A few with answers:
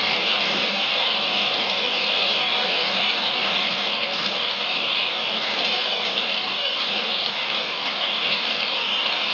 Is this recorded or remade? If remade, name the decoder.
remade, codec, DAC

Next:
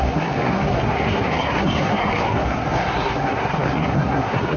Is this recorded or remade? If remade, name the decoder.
remade, codec, SNAC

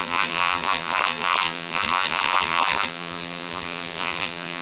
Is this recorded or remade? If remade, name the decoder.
remade, vocoder, BigVGAN v2